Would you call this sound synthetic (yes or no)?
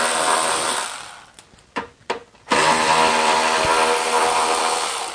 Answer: no